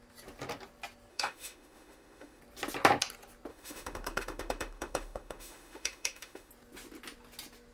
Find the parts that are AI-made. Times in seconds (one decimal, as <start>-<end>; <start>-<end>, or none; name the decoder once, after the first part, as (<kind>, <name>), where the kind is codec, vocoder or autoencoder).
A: 1.1-2.4 (autoencoder, DAC-VAE); 3.5-6.5